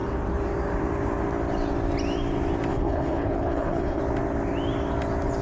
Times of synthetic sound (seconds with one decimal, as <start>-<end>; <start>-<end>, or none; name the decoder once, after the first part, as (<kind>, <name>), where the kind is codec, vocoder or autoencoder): 2.7-4.0 (codec, HILCodec)